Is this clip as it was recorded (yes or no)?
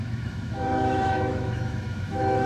no